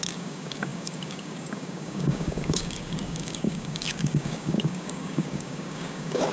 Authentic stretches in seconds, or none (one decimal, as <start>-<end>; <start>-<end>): none